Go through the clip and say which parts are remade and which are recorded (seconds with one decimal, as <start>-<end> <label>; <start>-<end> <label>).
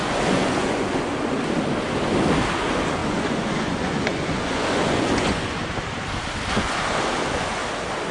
0.0-1.1 remade; 1.1-2.5 recorded; 2.5-5.6 remade; 5.6-6.5 recorded; 6.5-7.6 remade; 7.6-8.1 recorded